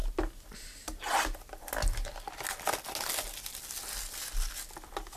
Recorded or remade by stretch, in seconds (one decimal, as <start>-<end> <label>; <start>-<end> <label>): 0.0-5.2 recorded